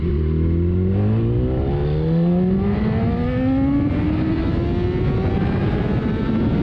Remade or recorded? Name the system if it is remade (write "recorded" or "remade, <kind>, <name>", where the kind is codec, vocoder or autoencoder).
recorded